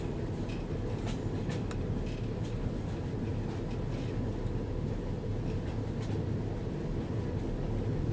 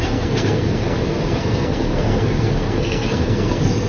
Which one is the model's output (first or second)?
second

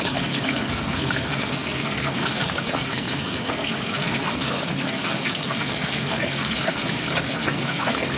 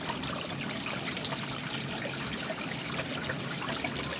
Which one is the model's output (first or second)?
first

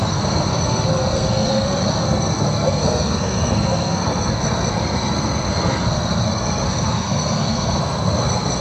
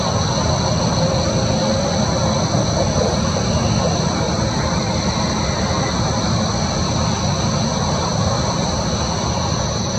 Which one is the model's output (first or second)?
first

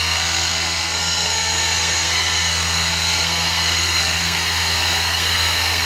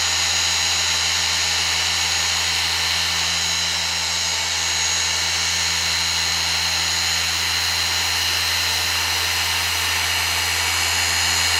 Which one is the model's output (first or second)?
first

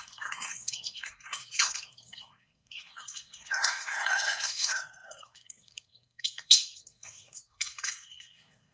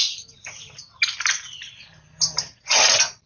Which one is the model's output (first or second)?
first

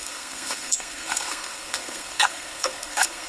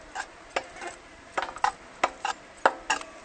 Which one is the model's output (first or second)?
first